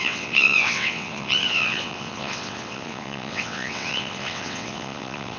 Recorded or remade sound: remade